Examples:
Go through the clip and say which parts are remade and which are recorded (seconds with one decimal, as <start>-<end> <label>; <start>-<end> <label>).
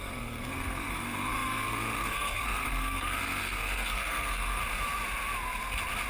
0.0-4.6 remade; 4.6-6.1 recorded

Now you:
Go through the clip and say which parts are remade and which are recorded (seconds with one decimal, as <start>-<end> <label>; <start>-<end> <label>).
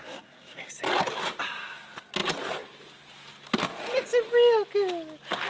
0.0-0.7 remade; 0.7-5.5 recorded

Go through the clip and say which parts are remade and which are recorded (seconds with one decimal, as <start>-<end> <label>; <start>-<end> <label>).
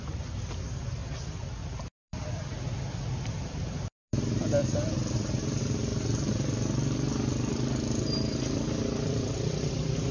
0.0-2.5 remade; 2.5-3.2 recorded; 3.2-5.9 remade; 5.9-8.0 recorded; 8.0-10.1 remade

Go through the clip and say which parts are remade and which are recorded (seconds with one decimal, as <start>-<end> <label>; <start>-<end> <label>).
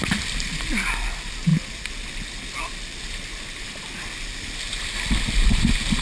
0.0-6.0 recorded